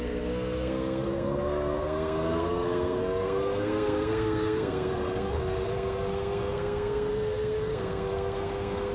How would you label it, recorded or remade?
remade